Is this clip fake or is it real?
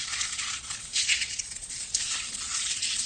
fake